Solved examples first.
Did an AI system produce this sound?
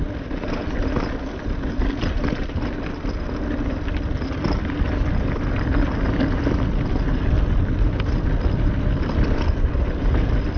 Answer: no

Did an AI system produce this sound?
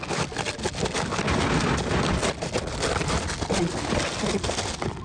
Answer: no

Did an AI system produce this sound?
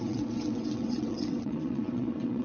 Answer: yes